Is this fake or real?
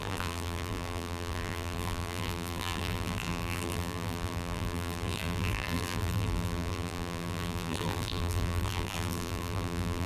fake